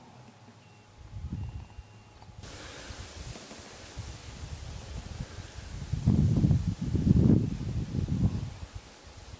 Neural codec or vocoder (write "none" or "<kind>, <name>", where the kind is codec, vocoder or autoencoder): none